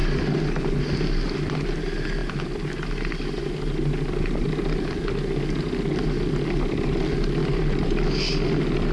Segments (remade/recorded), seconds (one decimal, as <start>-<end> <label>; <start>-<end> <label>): 0.0-7.4 recorded; 7.4-8.1 remade; 8.1-8.9 recorded